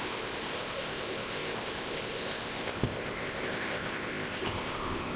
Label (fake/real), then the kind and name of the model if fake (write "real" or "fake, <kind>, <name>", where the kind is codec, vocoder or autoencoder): fake, codec, ZipCodec